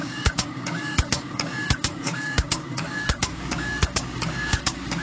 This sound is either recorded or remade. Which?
remade